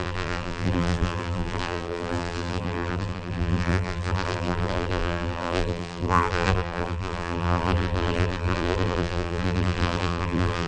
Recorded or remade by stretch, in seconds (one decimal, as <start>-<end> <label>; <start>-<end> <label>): 0.0-10.7 remade